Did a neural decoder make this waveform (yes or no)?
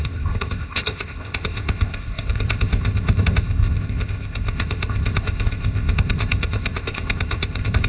yes